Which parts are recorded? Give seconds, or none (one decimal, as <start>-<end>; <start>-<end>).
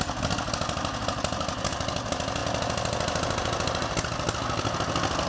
0.0-5.3